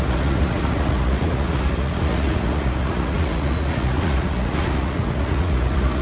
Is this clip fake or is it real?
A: fake